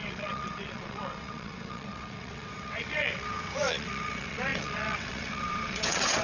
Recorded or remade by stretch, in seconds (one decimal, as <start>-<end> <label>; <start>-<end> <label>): 0.0-6.2 remade